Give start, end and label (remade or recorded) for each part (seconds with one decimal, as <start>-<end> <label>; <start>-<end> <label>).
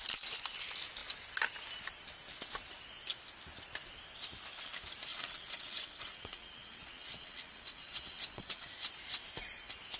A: 0.0-5.1 recorded; 5.1-8.7 remade; 8.7-10.0 recorded